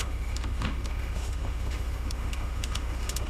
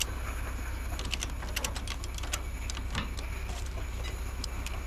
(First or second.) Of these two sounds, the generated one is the first